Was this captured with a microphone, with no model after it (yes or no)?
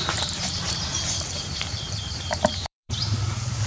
no